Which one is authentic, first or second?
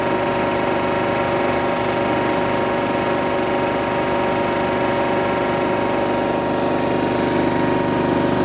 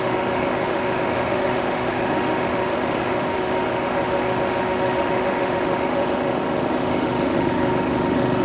first